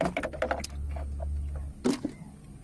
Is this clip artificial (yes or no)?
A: no